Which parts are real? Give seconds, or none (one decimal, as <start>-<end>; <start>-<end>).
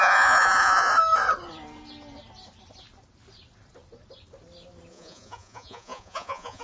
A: 0.9-4.9